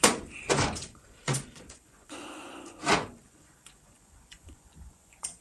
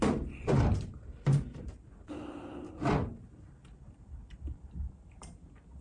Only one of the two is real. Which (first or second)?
second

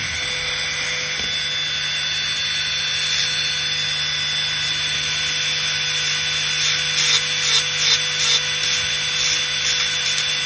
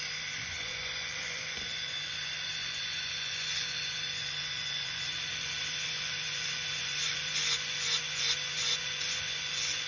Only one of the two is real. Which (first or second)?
first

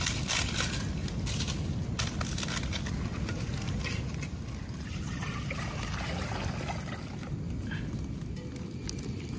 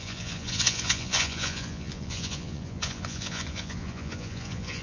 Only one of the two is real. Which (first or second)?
first